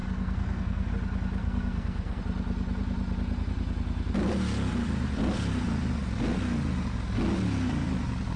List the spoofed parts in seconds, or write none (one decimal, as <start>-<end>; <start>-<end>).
0.0-0.9; 1.4-2.2